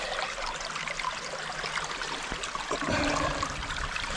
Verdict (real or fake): real